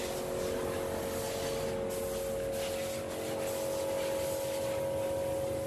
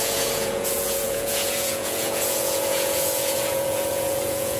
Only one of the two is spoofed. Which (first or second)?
second